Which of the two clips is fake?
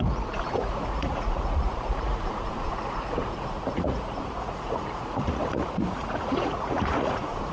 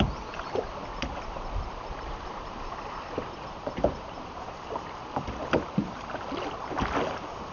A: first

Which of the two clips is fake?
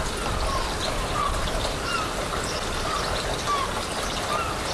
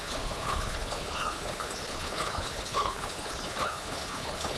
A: second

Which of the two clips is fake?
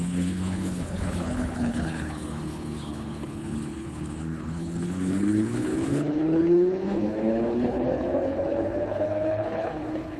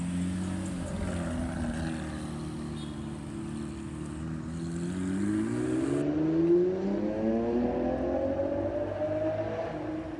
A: first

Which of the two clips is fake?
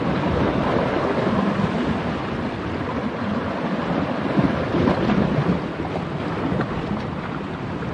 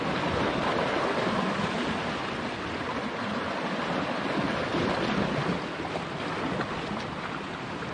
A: first